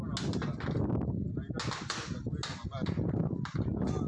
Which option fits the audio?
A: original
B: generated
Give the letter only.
A